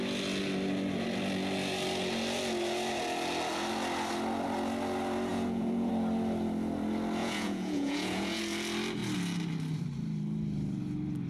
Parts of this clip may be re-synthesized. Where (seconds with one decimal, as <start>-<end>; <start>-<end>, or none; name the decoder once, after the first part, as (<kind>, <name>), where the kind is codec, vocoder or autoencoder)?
5.3-5.9 (vocoder, Vocos); 7.2-8.4